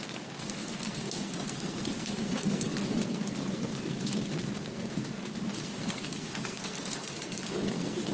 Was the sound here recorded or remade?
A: remade